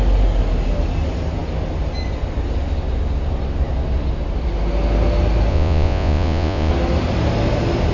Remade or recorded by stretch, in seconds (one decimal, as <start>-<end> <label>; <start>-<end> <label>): 0.0-5.5 recorded; 5.5-6.7 remade; 6.7-7.9 recorded